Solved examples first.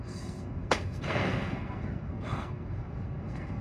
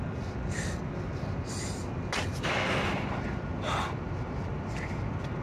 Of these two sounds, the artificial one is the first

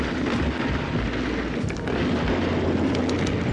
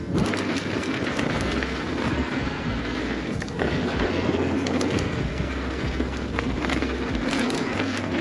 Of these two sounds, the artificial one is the second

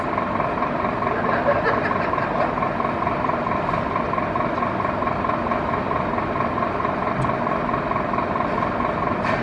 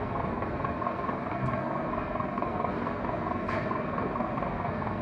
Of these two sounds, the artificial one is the second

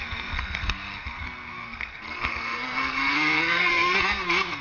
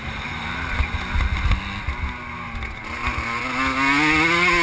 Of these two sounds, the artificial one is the first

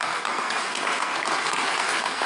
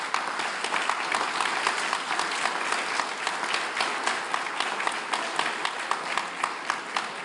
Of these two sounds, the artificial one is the first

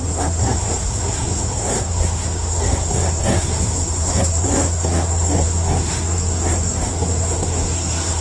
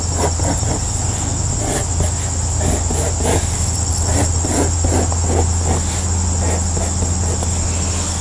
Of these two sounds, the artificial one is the first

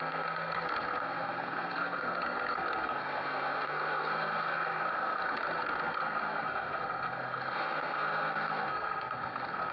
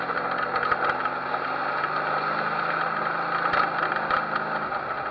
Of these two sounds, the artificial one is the first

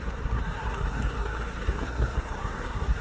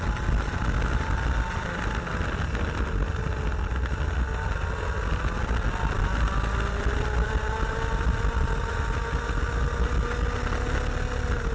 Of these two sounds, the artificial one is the first